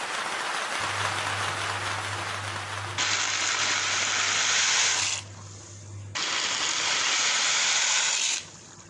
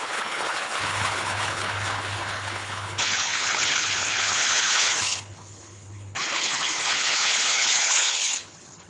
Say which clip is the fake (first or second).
second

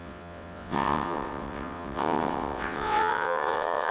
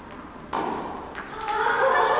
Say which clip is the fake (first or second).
first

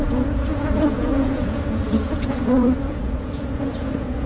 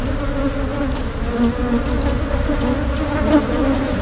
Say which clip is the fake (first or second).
first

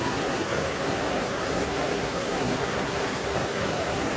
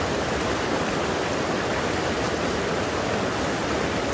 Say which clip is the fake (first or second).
first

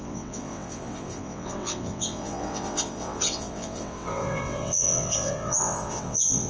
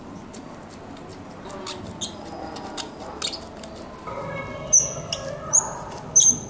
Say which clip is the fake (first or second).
first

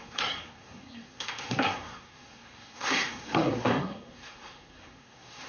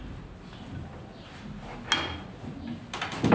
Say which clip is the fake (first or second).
first